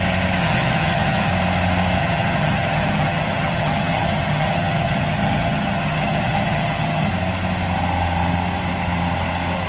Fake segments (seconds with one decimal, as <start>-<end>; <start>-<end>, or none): 0.4-1.3; 2.0-7.1

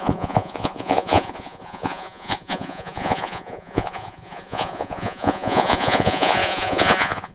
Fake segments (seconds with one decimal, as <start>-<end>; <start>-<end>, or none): 0.0-7.3

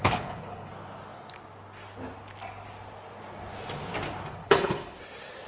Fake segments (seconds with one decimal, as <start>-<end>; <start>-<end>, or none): 0.0-0.7; 4.4-5.0

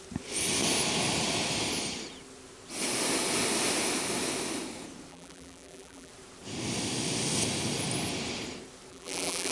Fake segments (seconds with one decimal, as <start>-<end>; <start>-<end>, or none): 5.1-6.1; 8.9-9.5

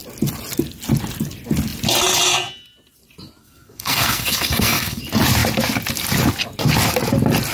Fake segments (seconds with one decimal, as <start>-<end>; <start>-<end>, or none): 3.4-5.0